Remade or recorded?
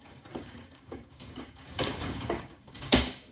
remade